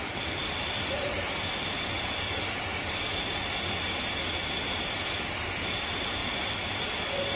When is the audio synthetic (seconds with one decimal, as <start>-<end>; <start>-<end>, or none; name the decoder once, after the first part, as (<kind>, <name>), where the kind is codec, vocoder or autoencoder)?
none